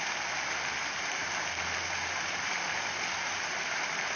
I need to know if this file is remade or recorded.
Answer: recorded